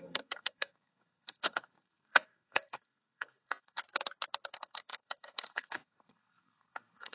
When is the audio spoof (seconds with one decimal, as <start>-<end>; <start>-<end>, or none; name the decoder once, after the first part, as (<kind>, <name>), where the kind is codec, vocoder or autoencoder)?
0.0-3.8 (codec, SNAC); 4.5-7.1